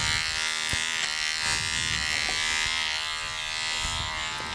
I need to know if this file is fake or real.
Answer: real